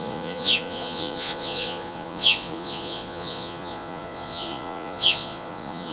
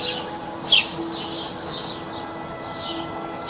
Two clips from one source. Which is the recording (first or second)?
second